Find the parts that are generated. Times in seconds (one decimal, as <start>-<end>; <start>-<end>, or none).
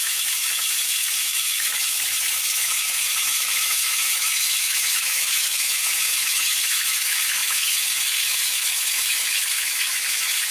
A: 0.0-10.5